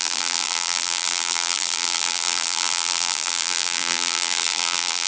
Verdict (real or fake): fake